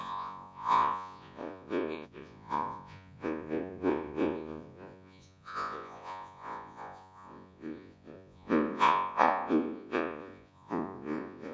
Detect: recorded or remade remade